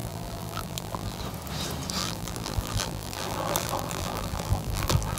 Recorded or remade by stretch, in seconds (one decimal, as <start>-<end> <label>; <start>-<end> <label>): 0.0-1.2 remade; 1.2-2.0 recorded; 2.0-5.2 remade